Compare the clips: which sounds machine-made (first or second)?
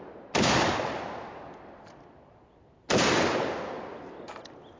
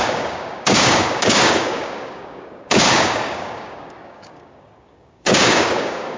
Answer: second